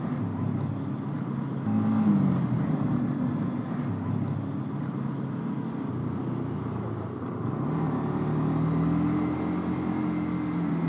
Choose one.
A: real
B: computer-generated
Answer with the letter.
A